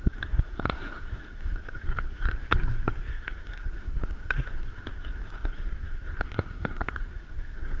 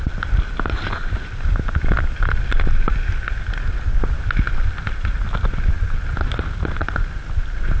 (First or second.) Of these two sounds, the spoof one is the first